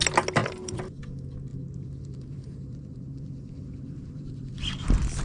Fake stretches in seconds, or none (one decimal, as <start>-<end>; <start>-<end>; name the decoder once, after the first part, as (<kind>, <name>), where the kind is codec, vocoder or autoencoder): 0.4-1.0 (vocoder, BigVGAN v2); 1.5-4.6

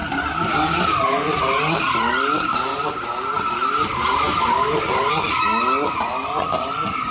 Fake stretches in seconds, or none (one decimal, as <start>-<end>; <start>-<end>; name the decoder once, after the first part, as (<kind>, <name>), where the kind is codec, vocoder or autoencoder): none

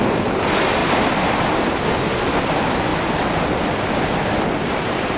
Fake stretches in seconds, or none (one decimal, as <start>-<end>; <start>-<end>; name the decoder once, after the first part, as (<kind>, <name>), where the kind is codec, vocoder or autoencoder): 0.8-1.3 (vocoder, BigVGAN v2)

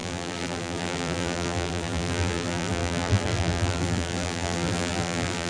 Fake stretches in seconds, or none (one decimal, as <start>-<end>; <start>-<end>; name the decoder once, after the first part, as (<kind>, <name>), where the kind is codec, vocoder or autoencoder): 0.0-5.5 (vocoder, BigVGAN v2)

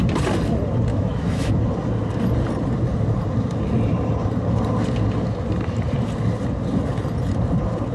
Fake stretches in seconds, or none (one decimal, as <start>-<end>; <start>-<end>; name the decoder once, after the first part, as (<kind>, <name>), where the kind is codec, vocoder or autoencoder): 0.9-1.5 (autoencoder, DAC-VAE)